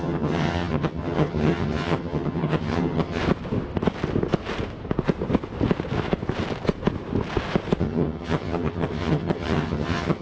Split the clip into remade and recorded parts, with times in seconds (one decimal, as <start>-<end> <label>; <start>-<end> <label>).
0.0-3.2 remade; 3.2-7.8 recorded; 7.8-10.2 remade